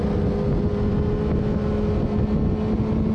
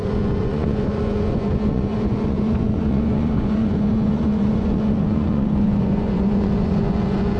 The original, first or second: first